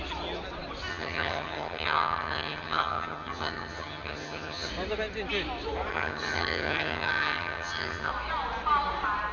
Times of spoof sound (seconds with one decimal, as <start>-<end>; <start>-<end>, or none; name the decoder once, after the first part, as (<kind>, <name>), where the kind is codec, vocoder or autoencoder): 0.9-4.7 (vocoder, HiFi-GAN); 5.9-8.1